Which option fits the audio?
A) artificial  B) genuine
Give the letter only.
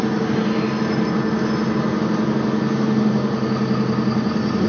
B